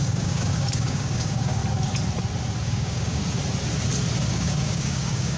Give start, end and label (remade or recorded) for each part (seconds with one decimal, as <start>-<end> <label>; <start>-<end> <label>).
0.0-1.6 remade; 1.6-2.6 recorded; 2.6-3.2 remade; 3.2-4.3 recorded; 4.3-5.4 remade